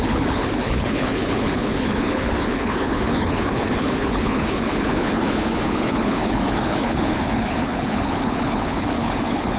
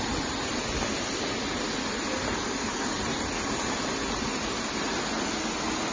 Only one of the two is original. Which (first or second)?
second